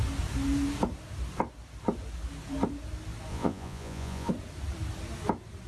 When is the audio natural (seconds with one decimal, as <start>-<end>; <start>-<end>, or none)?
0.0-3.3; 4.3-5.7